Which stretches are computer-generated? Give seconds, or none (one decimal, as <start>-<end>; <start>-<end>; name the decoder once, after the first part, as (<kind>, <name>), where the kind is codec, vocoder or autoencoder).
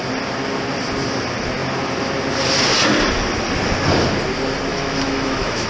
4.7-5.7 (autoencoder, DAC-VAE)